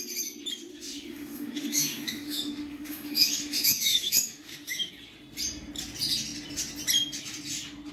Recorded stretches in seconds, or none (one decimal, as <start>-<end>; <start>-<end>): 0.0-0.7; 4.9-7.9